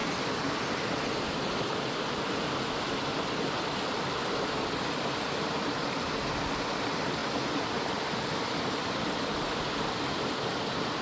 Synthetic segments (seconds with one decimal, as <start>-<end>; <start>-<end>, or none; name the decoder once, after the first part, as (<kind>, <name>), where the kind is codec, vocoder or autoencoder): 3.9-7.2 (vocoder, BigVGAN v2); 7.8-11.0